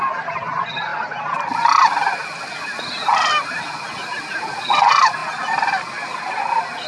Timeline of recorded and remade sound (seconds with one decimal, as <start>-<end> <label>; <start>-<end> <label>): 0.0-6.9 recorded